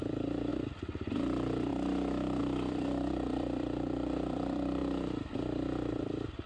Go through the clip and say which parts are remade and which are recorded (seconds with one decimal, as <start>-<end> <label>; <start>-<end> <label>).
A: 0.0-0.5 remade; 0.5-1.1 recorded; 1.1-1.7 remade; 1.7-2.4 recorded; 2.4-4.8 remade; 4.8-5.9 recorded; 5.9-6.5 remade